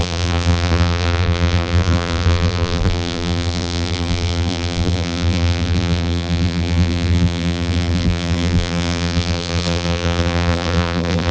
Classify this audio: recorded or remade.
remade